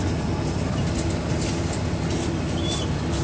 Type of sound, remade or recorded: recorded